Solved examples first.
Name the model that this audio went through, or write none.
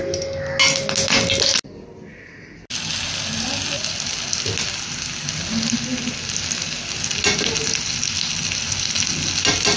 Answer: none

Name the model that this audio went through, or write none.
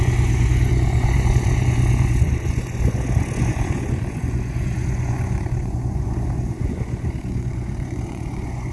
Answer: vocoder, Vocos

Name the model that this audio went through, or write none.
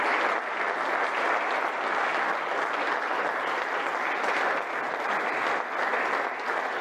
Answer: none